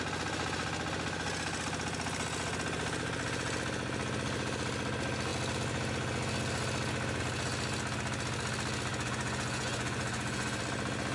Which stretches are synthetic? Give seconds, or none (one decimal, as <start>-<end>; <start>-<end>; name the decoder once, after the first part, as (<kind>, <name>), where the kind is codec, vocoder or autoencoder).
8.9-10.6 (vocoder, Vocos)